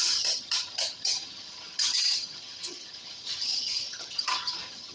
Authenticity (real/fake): fake